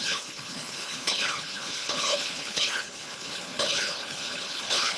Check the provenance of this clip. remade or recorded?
remade